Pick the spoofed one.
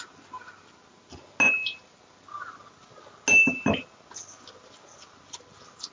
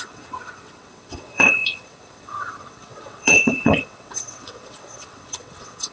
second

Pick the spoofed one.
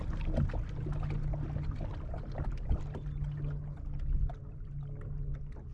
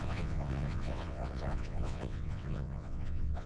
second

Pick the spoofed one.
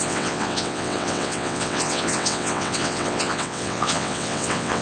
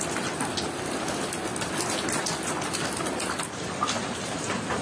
first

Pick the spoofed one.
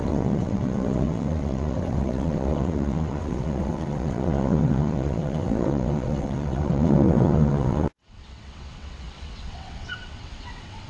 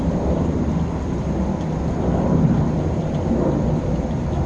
first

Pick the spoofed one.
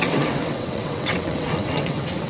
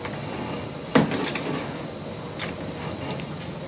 first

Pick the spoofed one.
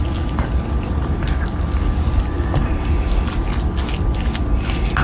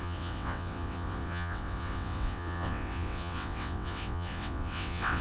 second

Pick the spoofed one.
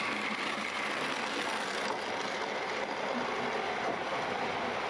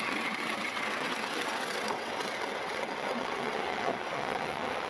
second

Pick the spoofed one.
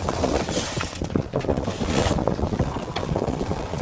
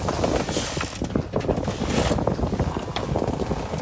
first